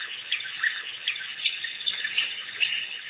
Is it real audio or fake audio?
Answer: real